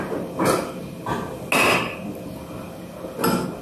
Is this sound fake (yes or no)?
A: no